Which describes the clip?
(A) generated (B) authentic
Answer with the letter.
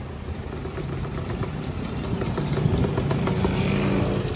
B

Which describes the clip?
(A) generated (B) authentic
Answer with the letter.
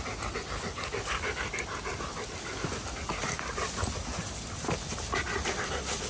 B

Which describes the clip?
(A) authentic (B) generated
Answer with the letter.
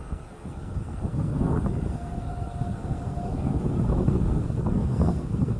B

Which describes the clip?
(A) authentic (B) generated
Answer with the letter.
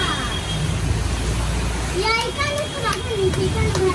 A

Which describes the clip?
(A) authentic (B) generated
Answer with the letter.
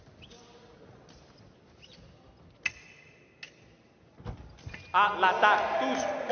A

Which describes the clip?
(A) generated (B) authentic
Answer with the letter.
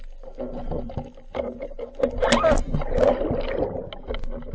B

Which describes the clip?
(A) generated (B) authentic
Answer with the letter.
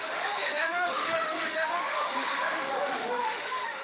A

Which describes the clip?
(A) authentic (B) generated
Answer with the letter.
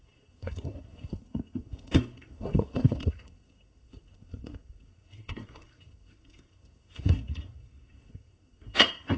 B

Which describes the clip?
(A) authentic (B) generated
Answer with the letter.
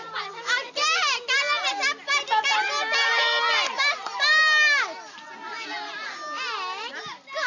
A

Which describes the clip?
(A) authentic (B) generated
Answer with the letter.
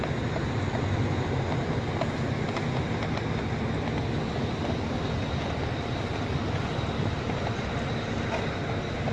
A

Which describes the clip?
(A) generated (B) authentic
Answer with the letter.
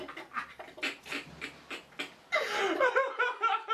A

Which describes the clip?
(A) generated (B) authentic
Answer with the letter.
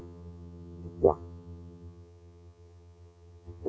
A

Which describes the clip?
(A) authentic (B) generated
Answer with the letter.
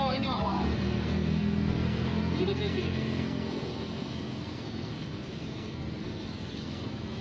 B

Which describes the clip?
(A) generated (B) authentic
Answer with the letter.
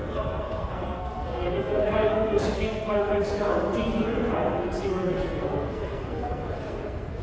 A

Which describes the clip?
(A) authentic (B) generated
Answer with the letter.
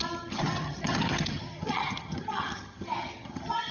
B